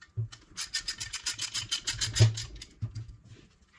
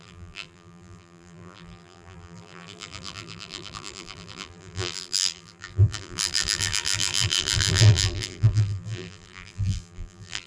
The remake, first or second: second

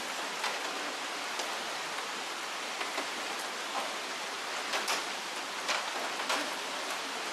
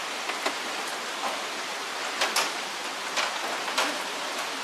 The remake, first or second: first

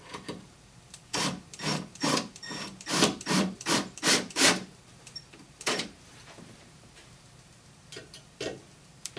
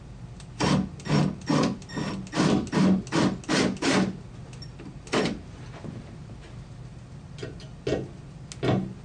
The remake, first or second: first